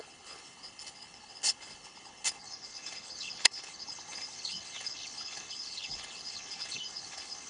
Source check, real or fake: fake